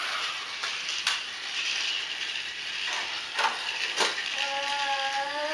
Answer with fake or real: fake